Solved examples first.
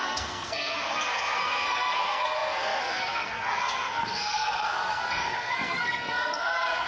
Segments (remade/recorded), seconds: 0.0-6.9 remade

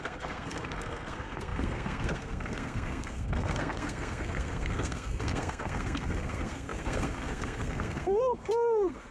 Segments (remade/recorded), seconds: 0.0-9.1 remade